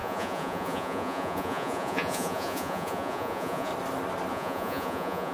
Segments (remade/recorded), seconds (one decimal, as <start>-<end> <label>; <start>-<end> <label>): 0.0-3.7 remade; 3.7-4.3 recorded; 4.3-5.3 remade

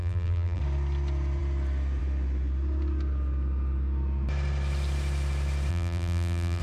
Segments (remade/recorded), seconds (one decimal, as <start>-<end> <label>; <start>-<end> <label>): 0.0-0.6 remade; 0.6-5.7 recorded; 5.7-6.6 remade

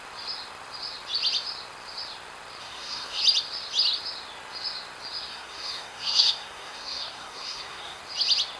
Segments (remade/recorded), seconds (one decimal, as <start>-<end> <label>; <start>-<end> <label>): 0.0-2.6 recorded; 2.6-3.2 remade; 3.2-5.3 recorded; 5.3-8.0 remade; 8.0-8.6 recorded